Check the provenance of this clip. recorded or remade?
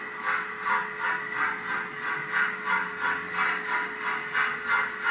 recorded